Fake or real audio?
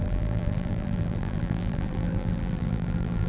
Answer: fake